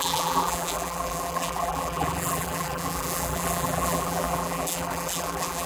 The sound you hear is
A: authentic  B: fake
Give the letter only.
B